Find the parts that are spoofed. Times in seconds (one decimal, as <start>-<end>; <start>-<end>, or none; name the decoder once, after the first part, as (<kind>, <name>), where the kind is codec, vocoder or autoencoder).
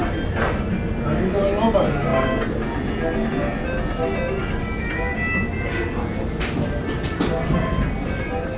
none